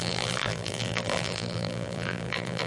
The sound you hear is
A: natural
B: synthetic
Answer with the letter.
B